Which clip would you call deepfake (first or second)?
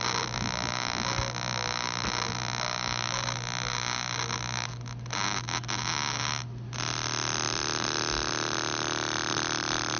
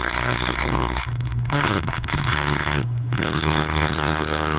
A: second